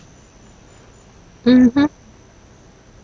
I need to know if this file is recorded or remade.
recorded